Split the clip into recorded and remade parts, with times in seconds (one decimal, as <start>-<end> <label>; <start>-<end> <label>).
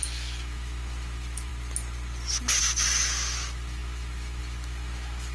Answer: 0.0-1.5 remade; 1.5-2.6 recorded; 2.6-5.3 remade